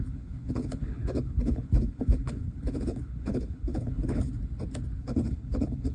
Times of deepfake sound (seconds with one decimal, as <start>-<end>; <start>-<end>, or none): 0.0-4.3; 5.0-5.9